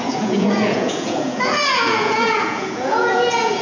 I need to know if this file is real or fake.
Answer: fake